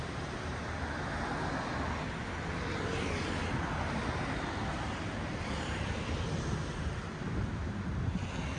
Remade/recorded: recorded